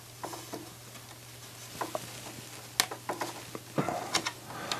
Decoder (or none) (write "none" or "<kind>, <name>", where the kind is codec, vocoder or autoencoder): none